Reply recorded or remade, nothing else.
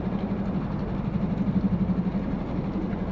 recorded